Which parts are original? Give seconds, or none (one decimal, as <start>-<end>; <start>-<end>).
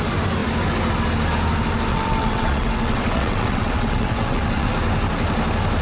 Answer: 0.0-1.9; 4.7-5.8